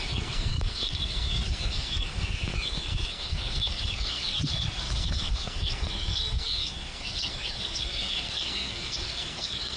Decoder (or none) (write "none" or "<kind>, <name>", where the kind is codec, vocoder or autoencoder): codec, SNAC